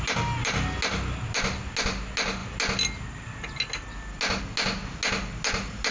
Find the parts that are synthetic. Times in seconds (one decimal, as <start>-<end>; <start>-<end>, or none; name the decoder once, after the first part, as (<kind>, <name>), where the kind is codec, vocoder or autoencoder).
none